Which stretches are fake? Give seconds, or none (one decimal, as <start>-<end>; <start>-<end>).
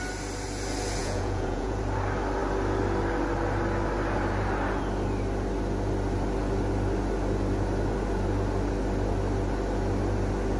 1.0-1.8